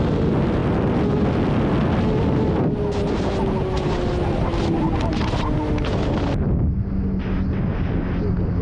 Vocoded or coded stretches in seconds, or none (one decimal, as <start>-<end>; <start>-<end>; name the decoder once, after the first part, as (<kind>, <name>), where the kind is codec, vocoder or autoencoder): none